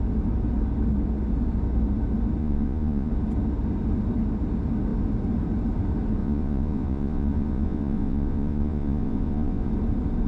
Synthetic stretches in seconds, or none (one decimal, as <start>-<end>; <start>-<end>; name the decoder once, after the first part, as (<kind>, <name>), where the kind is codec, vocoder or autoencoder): 2.4-3.1 (vocoder, Vocos); 6.2-9.7